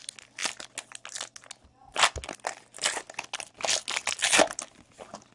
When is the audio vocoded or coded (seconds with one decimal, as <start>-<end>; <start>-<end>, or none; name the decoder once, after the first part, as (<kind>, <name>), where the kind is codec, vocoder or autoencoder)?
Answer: none